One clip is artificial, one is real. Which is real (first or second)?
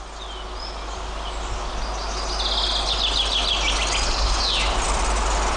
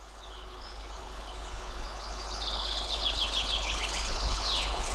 first